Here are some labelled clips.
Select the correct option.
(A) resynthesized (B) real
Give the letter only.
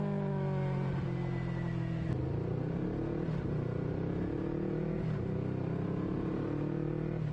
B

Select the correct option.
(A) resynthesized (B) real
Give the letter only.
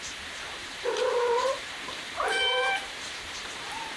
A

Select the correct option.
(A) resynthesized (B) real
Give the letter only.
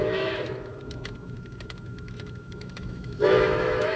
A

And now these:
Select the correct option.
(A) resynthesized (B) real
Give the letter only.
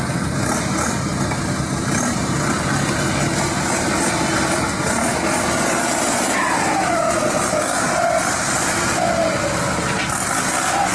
B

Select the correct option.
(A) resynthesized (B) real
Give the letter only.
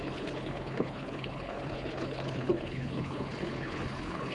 A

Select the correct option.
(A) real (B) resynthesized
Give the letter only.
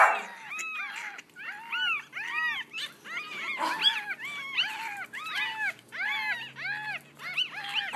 A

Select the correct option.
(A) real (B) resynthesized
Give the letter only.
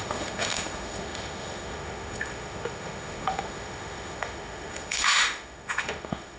B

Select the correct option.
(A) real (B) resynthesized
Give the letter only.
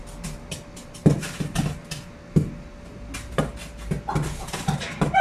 A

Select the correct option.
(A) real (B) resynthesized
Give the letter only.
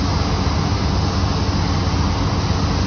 A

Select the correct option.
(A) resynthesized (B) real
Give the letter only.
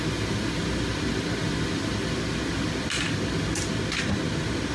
B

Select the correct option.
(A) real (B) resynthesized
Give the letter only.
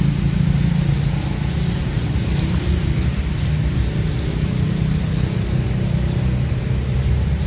A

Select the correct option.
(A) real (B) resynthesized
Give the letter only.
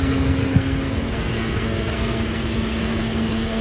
B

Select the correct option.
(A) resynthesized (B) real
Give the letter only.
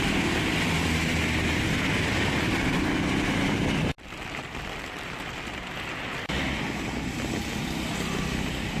B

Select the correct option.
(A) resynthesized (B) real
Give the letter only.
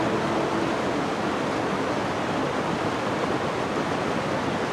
B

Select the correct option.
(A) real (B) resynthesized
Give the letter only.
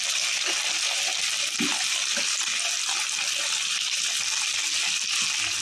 A